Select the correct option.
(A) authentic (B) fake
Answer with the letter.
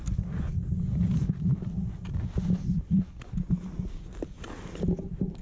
A